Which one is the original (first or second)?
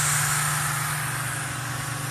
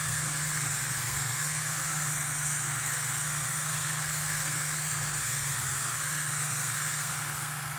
first